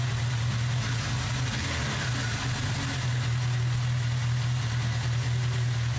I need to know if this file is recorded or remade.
recorded